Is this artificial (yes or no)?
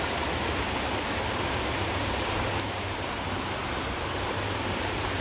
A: no